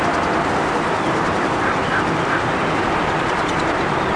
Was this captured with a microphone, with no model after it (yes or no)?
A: yes